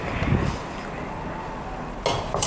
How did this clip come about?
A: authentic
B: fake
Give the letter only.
A